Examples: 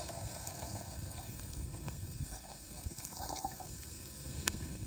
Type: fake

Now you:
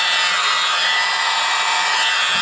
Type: real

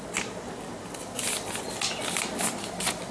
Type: real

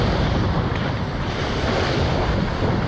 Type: real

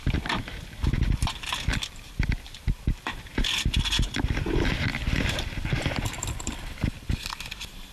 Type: fake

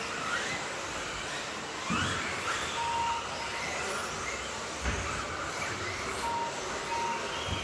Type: real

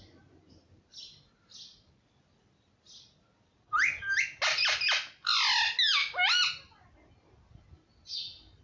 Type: real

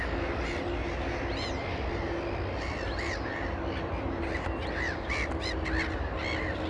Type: real